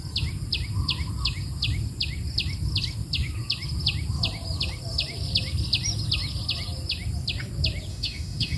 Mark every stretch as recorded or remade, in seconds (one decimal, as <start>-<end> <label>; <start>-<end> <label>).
0.0-7.9 recorded; 7.9-8.6 remade